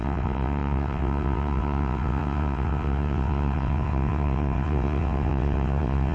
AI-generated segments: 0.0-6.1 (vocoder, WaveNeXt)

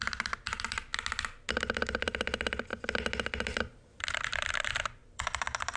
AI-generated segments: 0.0-0.9 (vocoder, BigVGAN v2); 1.8-2.7; 4.0-5.8

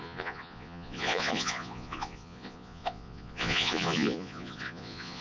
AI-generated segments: 0.0-5.2 (vocoder, Vocos)

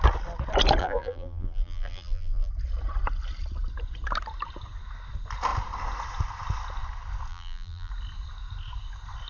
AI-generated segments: 0.8-2.5 (vocoder, BigVGAN v2); 7.3-7.9

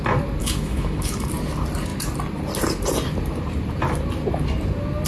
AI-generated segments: 0.4-1.3 (autoencoder, DAC-VAE)